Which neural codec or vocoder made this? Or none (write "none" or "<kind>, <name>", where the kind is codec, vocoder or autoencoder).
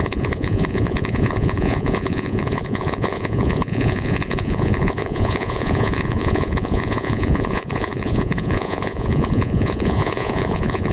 vocoder, Vocos